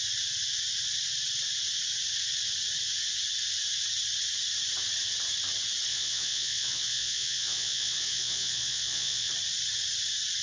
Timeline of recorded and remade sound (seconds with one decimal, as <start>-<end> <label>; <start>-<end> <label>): 0.0-5.9 recorded; 5.9-9.3 remade; 9.3-10.4 recorded